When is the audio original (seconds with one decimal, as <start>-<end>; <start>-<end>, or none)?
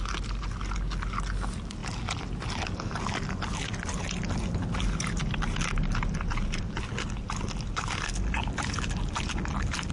0.0-9.9